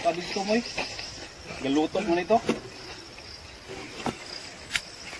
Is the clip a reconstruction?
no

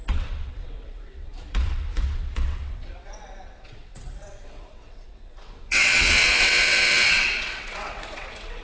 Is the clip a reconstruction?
yes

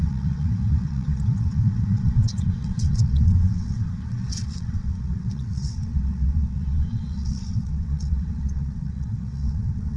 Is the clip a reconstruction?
yes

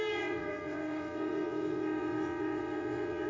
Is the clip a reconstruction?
yes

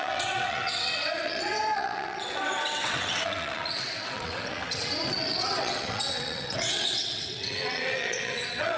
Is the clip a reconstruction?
yes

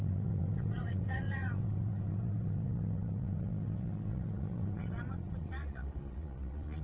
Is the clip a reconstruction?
yes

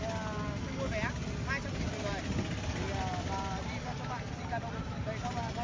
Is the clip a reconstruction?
no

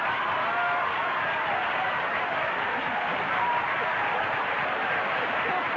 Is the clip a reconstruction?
no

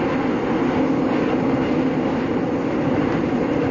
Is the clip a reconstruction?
no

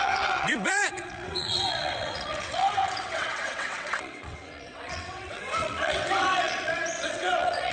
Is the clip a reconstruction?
yes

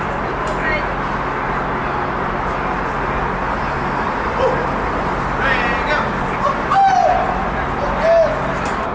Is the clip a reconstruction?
no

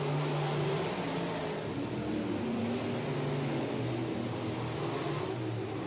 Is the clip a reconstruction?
no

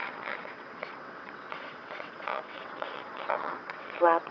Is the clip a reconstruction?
yes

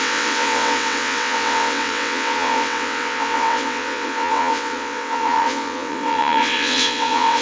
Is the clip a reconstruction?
yes